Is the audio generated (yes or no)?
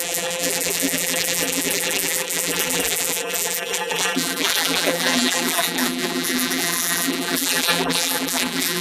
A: yes